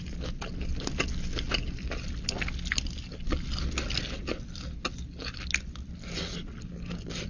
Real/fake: real